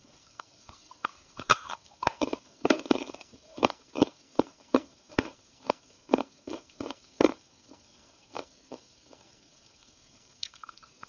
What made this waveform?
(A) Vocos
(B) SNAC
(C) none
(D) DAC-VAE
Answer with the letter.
B